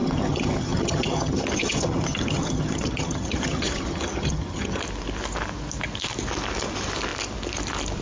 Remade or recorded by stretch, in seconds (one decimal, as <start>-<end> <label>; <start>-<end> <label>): 0.0-4.8 remade; 4.8-8.0 recorded